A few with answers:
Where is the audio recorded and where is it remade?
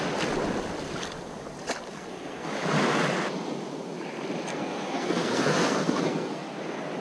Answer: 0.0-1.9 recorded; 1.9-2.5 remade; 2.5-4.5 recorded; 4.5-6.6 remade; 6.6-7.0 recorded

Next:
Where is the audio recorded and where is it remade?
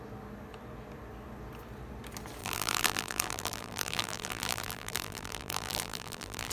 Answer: 0.0-2.4 recorded; 2.4-6.5 remade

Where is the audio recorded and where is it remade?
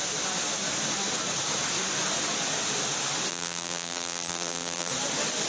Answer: 0.0-3.3 recorded; 3.3-4.9 remade; 4.9-5.5 recorded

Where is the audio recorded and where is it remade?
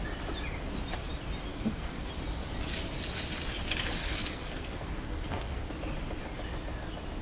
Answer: 0.0-1.5 recorded; 1.5-2.1 remade; 2.1-4.0 recorded; 4.0-5.6 remade; 5.6-7.2 recorded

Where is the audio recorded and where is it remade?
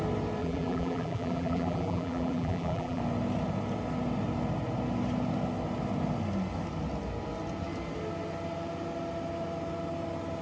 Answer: 0.0-0.4 recorded; 0.4-3.0 remade; 3.0-10.4 recorded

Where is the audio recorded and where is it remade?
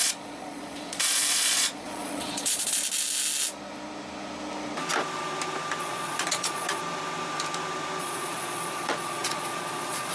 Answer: 0.0-2.8 remade; 2.8-5.8 recorded; 5.8-6.8 remade; 6.8-8.0 recorded; 8.0-10.1 remade